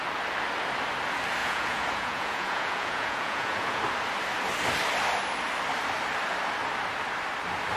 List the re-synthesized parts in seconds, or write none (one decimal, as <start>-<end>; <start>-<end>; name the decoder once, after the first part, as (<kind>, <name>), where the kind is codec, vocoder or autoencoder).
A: 1.4-3.8 (vocoder, Vocos)